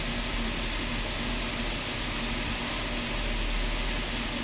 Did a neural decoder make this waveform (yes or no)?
no